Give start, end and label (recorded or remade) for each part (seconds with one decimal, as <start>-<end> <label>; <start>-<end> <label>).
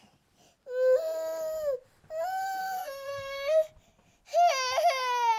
0.0-2.6 recorded; 2.6-3.7 remade; 3.7-5.4 recorded